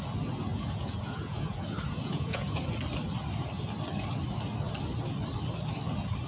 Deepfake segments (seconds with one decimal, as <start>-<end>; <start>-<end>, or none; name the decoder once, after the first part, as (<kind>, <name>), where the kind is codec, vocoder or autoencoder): 0.5-2.6 (vocoder, Vocos)